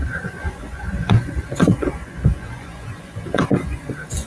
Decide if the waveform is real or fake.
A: fake